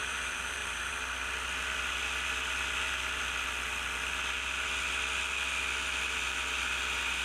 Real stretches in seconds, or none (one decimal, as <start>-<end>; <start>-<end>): 0.9-7.2